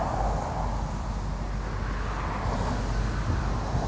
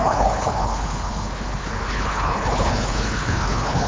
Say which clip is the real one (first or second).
first